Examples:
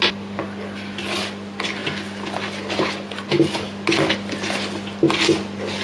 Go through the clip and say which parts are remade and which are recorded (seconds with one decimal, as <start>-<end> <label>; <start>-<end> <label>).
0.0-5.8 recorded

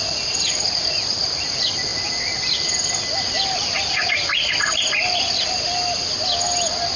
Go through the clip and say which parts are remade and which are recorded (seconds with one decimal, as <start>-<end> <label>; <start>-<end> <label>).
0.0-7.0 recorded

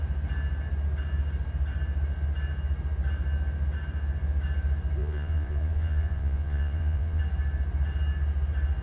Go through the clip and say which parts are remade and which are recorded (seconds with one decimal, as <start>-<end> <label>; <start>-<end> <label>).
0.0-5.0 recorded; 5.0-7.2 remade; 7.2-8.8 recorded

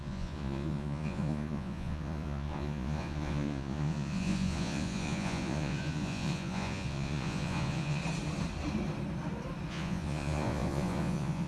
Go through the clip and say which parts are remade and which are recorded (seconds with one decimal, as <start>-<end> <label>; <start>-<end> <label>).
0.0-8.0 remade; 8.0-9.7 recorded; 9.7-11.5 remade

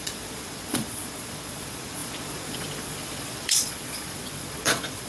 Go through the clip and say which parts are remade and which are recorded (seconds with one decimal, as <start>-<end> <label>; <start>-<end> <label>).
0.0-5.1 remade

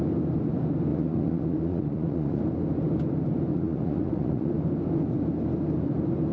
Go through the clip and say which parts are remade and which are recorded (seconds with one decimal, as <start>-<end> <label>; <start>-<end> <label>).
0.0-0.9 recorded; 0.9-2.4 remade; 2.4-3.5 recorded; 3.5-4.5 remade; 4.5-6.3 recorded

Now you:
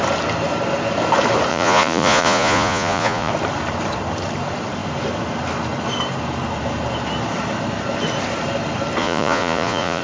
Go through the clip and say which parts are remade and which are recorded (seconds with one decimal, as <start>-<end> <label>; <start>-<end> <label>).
0.0-1.5 recorded; 1.5-3.3 remade; 3.3-9.0 recorded; 9.0-10.0 remade